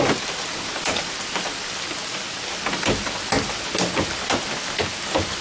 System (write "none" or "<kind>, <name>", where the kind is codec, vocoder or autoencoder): none